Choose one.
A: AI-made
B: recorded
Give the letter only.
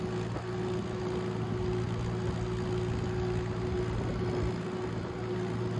B